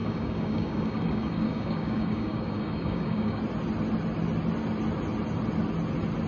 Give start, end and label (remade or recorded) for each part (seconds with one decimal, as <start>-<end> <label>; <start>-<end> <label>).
0.0-3.4 remade; 3.4-6.3 recorded